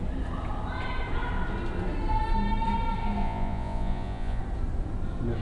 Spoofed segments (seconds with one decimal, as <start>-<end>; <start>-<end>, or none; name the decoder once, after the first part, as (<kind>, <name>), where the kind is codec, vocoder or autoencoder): 3.2-4.4 (vocoder, Vocos)